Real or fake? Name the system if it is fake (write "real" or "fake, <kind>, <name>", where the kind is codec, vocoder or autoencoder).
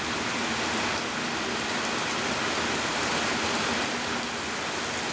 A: real